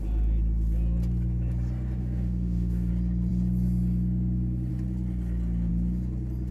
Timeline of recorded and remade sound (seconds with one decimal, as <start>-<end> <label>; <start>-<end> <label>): 0.0-2.0 recorded; 2.0-2.9 remade; 2.9-6.5 recorded